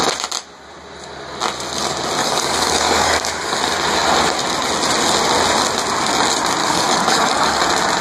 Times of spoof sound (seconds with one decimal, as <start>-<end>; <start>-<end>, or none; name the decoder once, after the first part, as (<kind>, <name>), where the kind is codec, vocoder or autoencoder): 2.2-3.6 (codec, DAC); 6.6-7.6